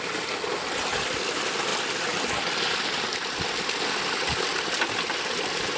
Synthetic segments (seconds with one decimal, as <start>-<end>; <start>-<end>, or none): none